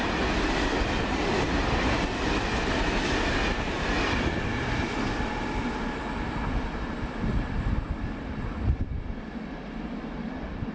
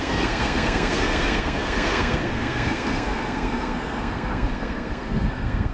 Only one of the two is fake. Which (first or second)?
second